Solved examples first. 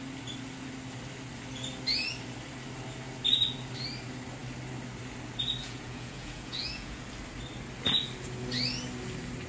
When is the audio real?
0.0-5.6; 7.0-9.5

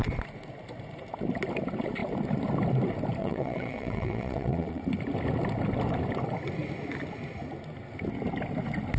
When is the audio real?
0.0-3.2; 4.8-9.0